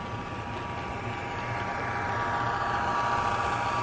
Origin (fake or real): real